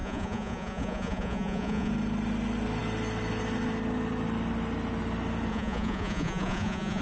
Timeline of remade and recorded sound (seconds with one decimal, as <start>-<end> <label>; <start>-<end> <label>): 0.0-1.9 remade; 1.9-5.5 recorded; 5.5-7.0 remade